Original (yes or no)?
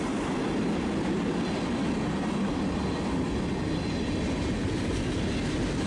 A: yes